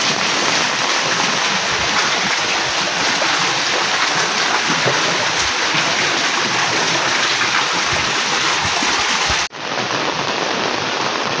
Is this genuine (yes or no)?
no